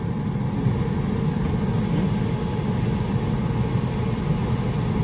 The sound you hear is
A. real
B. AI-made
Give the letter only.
A